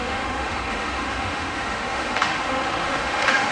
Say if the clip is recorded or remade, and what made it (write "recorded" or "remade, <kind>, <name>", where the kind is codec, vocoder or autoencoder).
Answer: remade, autoencoder, DAC-VAE